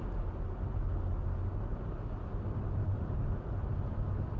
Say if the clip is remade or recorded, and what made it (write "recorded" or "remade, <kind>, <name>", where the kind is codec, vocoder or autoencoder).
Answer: recorded